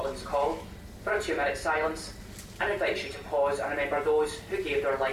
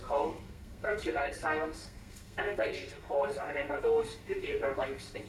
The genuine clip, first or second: first